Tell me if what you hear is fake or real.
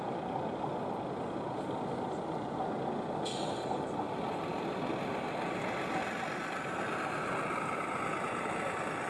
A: real